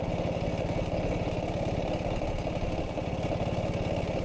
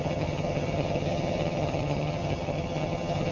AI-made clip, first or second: second